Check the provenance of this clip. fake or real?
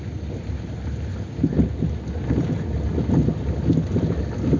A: real